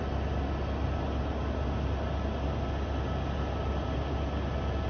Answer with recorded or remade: recorded